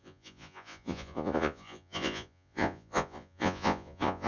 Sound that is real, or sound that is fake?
fake